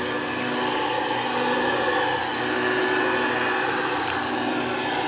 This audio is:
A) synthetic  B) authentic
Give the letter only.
B